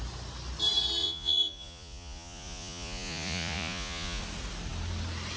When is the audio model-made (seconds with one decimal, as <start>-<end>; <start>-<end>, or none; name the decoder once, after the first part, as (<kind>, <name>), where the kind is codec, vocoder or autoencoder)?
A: 1.0-4.2 (vocoder, Vocos)

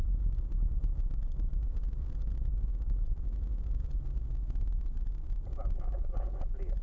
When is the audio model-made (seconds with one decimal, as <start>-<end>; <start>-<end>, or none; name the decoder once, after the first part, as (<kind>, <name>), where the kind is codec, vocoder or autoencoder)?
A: none

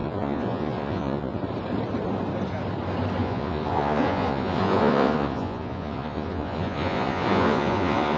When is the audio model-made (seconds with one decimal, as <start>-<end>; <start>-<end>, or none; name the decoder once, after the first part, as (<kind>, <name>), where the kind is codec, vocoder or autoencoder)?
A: 0.0-1.4 (vocoder, Vocos); 3.2-8.2

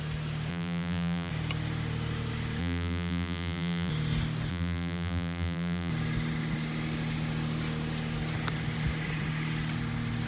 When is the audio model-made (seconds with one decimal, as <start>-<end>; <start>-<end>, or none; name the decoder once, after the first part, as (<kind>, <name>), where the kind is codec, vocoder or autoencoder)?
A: 0.5-1.3 (vocoder, BigVGAN v2); 2.6-3.9; 4.5-5.9

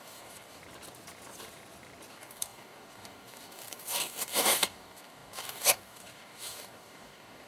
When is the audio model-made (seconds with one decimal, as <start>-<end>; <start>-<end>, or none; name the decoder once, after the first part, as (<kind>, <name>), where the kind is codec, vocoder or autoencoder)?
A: 0.0-0.6 (codec, DAC); 2.1-7.5